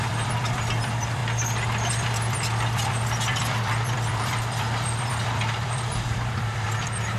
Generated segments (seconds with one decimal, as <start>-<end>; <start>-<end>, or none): 0.0-1.2; 1.9-7.2